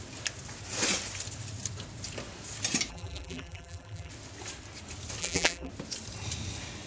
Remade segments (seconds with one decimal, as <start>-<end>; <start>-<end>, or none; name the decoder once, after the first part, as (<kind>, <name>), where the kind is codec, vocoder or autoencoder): 2.9-4.1 (vocoder, BigVGAN v2); 5.2-5.7